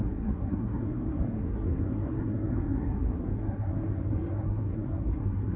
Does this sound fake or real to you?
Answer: fake